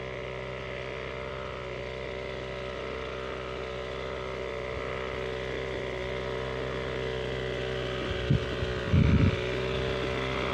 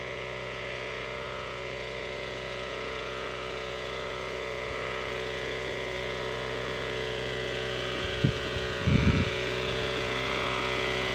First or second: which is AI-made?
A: second